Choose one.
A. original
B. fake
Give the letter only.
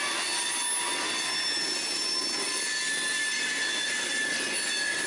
A